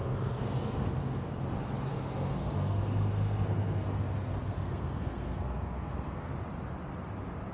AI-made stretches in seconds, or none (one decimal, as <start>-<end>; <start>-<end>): 0.0-1.3; 1.9-6.3